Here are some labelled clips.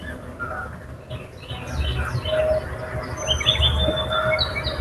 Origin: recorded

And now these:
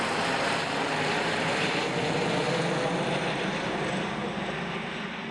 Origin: recorded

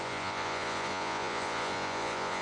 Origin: remade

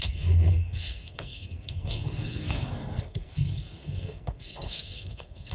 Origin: remade